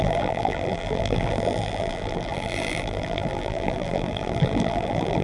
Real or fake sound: fake